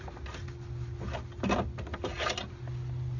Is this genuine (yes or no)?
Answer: yes